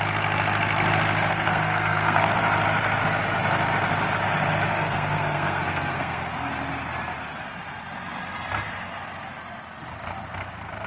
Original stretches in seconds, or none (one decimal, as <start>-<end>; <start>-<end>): 0.0-1.3; 2.4-4.7; 6.5-10.9